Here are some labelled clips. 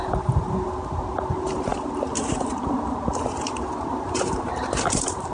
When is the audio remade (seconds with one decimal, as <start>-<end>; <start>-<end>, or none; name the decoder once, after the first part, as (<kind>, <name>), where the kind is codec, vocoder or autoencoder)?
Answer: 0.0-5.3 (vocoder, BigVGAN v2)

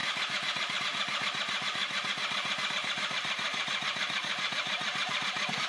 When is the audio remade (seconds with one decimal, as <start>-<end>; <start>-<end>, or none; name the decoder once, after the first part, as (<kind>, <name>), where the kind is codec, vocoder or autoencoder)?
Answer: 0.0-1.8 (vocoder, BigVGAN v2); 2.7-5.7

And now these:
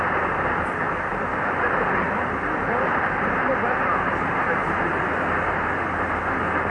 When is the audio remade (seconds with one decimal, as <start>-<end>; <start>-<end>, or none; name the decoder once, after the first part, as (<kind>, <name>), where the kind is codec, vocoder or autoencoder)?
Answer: none

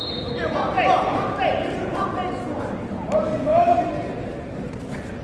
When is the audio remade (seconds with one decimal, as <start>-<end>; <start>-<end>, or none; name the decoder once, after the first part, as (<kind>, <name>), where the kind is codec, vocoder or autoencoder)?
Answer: 3.5-4.7 (vocoder, BigVGAN v2)

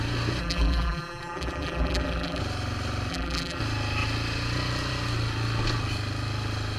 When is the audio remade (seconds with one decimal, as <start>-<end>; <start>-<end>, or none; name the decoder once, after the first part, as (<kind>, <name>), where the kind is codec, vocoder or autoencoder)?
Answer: 0.4-2.4 (vocoder, BigVGAN v2); 3.1-3.6